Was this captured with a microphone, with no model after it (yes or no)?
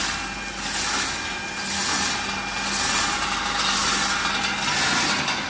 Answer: yes